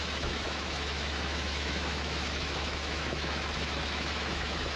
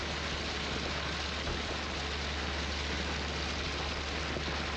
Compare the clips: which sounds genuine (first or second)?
second